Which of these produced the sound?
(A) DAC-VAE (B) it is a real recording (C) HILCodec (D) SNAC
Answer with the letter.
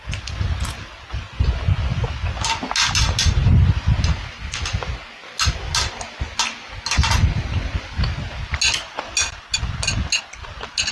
B